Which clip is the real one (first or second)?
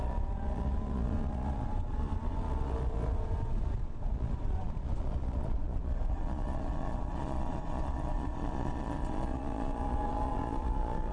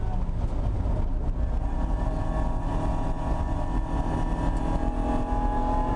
second